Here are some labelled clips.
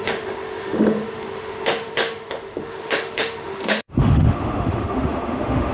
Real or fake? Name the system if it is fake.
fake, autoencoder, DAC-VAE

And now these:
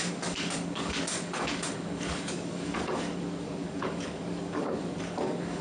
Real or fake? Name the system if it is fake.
fake, codec, DAC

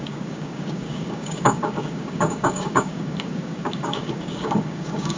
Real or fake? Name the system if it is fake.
fake, codec, DAC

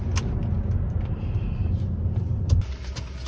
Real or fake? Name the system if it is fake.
real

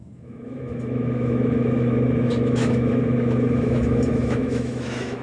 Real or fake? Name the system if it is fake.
fake, autoencoder, DAC-VAE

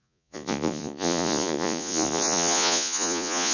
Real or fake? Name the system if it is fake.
fake, vocoder, Vocos